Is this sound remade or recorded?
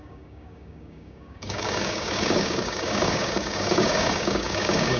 remade